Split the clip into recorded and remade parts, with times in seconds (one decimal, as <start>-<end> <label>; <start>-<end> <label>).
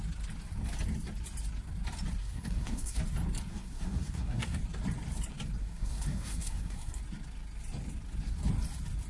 0.0-2.2 recorded; 2.2-3.0 remade; 3.0-3.5 recorded; 3.5-4.6 remade; 4.6-5.6 recorded; 5.6-7.0 remade; 7.0-9.1 recorded